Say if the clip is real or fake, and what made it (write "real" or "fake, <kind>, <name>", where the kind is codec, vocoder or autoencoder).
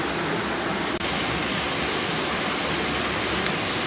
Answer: real